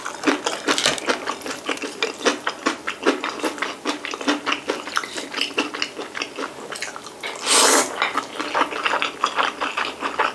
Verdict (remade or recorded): recorded